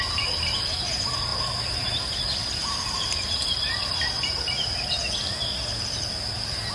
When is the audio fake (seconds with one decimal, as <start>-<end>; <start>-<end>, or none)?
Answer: none